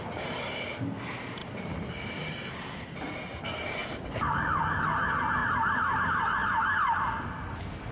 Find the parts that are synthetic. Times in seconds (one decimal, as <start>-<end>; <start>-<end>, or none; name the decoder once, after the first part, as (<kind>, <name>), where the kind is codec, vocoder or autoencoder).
3.8-4.6 (vocoder, BigVGAN v2); 5.4-6.0